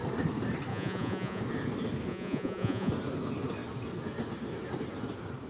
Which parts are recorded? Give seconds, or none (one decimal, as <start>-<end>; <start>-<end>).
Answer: 0.0-0.7; 1.4-2.1; 2.9-5.5